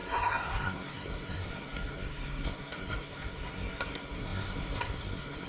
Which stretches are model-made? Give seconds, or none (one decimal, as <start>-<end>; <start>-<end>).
0.0-5.5